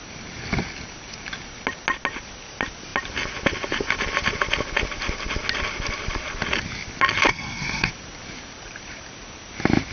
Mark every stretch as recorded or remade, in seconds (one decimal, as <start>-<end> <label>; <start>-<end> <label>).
0.0-7.3 recorded; 7.3-7.9 remade; 7.9-9.9 recorded